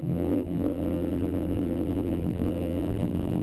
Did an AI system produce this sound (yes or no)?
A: yes